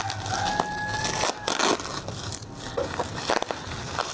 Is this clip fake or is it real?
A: real